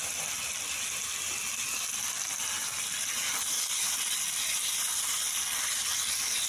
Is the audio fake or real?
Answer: real